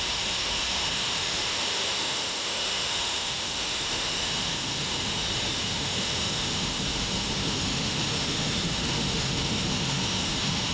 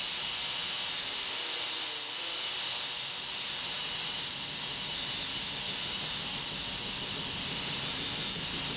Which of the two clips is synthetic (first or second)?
first